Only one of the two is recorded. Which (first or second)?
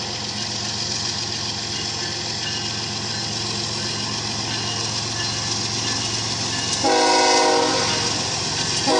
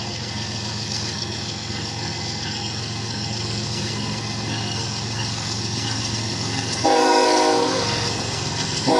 first